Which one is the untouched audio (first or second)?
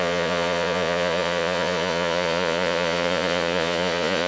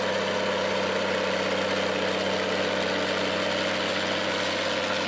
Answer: second